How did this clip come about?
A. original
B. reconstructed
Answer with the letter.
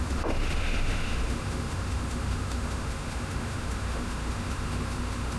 B